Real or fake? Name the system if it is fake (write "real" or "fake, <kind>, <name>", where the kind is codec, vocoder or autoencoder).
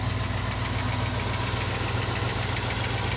real